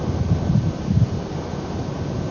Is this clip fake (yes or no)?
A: no